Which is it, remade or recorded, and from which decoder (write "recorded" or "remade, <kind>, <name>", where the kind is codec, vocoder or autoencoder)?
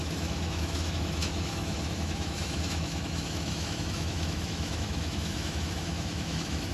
remade, autoencoder, DAC-VAE